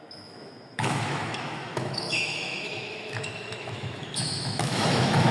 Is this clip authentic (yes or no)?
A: no